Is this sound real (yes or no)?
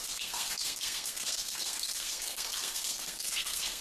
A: no